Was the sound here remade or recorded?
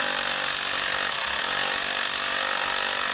recorded